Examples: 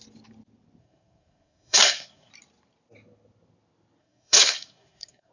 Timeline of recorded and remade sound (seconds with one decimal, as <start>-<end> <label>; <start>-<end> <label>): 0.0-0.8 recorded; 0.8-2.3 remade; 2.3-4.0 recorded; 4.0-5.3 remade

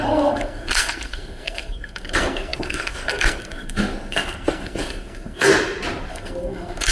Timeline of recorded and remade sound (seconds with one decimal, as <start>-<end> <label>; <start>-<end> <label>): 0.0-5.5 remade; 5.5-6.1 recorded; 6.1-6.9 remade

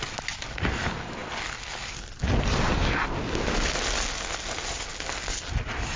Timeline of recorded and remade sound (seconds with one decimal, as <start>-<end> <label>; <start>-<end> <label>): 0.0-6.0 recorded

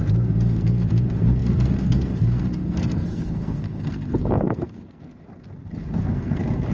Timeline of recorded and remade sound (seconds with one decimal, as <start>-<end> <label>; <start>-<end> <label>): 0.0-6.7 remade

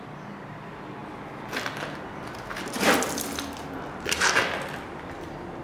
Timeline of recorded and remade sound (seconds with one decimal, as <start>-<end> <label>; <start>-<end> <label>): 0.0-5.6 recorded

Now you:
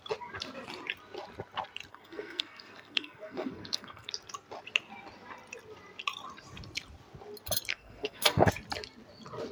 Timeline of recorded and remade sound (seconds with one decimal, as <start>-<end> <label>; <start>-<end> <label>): 0.0-1.9 recorded; 1.9-4.1 remade; 4.1-7.7 recorded; 7.7-8.5 remade; 8.5-9.5 recorded